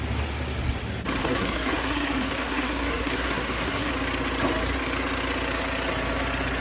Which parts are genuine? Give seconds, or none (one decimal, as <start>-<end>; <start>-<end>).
0.0-1.2; 3.9-6.6